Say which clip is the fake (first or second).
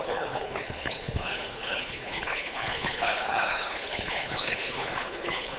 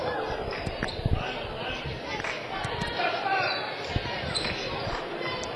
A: first